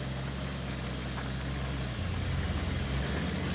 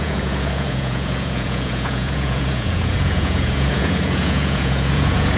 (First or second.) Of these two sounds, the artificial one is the second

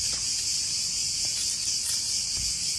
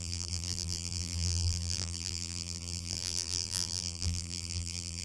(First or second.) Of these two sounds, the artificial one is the second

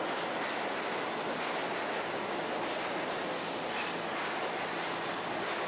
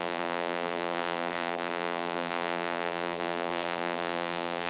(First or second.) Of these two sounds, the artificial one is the second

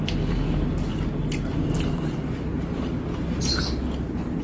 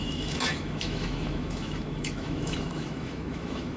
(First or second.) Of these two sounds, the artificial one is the second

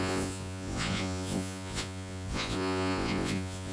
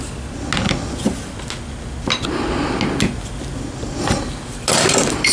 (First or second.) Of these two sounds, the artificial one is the first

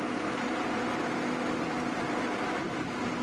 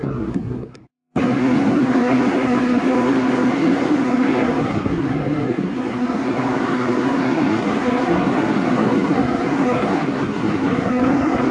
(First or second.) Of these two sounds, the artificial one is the second